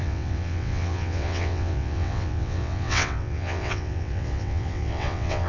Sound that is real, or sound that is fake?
fake